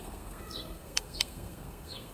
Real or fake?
fake